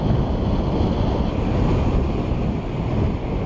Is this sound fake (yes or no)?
no